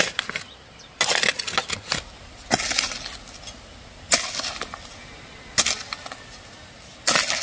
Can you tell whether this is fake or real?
real